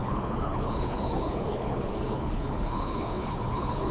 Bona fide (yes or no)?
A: no